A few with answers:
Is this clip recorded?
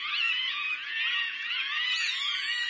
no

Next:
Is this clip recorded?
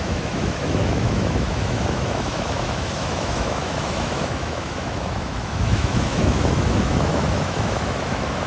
no